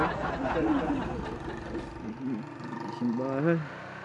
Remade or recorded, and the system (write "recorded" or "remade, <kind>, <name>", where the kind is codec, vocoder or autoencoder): recorded